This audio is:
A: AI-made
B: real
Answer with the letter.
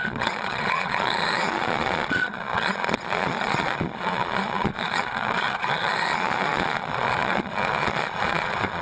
A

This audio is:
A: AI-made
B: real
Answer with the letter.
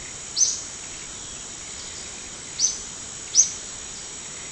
B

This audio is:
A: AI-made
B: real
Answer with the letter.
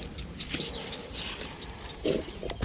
B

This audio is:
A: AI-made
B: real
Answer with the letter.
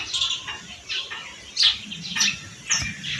B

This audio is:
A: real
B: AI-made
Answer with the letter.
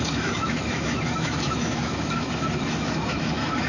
B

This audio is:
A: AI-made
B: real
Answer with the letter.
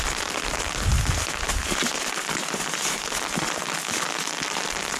B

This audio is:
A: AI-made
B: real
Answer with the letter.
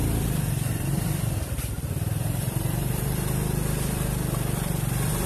A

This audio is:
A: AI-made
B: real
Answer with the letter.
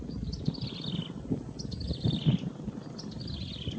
B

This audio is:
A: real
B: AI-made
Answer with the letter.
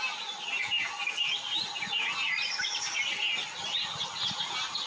A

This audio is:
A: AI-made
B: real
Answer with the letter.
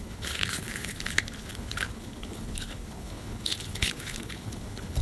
A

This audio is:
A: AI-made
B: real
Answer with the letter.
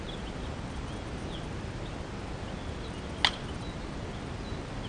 B